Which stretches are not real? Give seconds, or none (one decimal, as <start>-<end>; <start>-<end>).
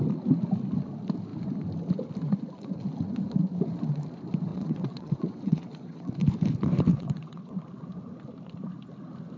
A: 4.5-6.1; 6.9-7.5